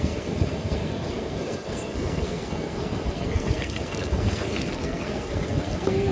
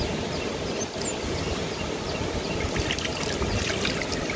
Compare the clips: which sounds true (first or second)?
second